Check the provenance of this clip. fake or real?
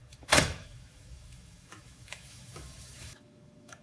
fake